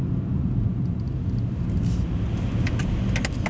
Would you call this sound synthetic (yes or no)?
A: no